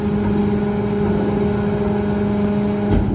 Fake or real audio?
real